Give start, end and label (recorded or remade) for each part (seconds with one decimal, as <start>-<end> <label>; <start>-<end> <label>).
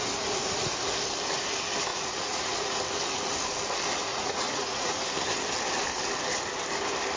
0.0-1.9 recorded; 1.9-2.8 remade; 2.8-4.1 recorded; 4.1-5.0 remade; 5.0-7.2 recorded